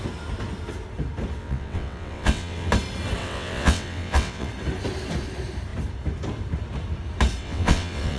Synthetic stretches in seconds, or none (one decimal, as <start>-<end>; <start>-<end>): 1.4-2.7; 3.2-4.5; 7.4-8.2